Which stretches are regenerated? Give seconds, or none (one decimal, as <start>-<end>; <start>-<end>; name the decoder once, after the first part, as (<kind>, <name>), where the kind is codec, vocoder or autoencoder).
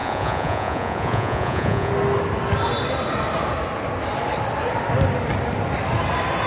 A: 0.0-1.9 (vocoder, Vocos)